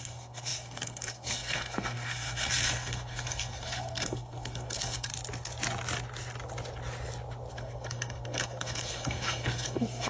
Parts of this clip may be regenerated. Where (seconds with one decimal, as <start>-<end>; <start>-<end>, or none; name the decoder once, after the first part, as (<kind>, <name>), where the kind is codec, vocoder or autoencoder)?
0.0-5.1 (codec, SNAC); 7.5-10.1